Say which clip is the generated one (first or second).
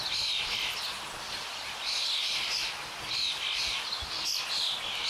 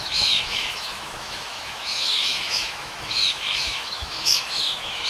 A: second